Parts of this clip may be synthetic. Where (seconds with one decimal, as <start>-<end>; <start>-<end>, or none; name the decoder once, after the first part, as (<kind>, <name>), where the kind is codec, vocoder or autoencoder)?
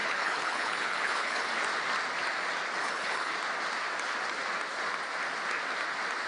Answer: 0.0-1.5 (codec, HILCodec); 2.8-3.3